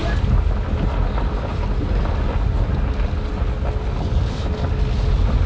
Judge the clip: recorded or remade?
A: recorded